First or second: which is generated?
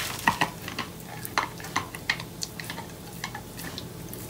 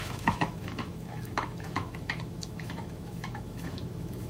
second